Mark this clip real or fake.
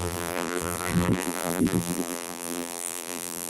fake